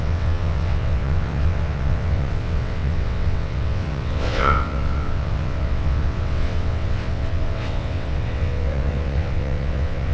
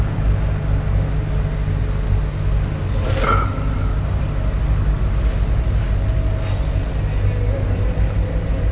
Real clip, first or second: second